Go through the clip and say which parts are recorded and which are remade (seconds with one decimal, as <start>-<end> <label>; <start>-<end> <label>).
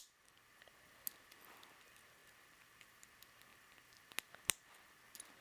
0.0-5.4 recorded